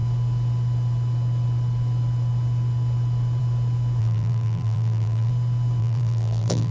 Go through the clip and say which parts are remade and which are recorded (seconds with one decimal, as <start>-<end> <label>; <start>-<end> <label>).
0.0-4.0 recorded; 4.0-5.3 remade; 5.3-5.8 recorded; 5.8-6.7 remade

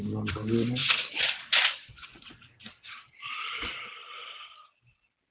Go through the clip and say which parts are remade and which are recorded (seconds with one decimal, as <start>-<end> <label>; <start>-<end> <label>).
0.0-5.3 remade

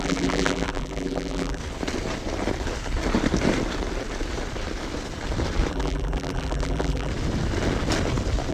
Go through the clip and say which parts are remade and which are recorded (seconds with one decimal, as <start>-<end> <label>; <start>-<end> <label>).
0.0-1.6 remade; 1.6-5.7 recorded; 5.7-7.1 remade; 7.1-8.5 recorded

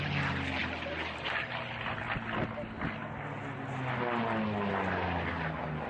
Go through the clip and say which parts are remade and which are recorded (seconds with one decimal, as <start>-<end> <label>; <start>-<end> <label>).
0.0-0.6 recorded; 0.6-2.0 remade; 2.0-5.9 recorded

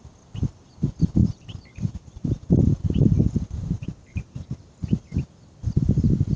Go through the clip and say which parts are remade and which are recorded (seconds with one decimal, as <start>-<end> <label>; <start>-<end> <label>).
0.0-1.2 recorded; 1.2-5.0 remade; 5.0-6.4 recorded

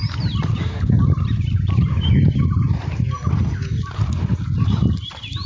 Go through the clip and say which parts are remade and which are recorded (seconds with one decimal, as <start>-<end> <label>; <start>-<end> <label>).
0.0-3.3 remade; 3.3-5.5 recorded

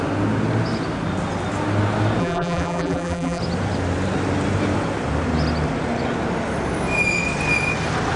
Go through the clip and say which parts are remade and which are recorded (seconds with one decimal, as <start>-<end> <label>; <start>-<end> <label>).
0.0-2.2 recorded; 2.2-3.4 remade; 3.4-8.2 recorded

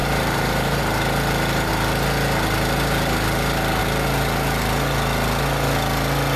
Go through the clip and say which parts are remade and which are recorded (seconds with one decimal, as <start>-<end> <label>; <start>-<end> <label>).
0.0-0.8 remade; 0.8-6.4 recorded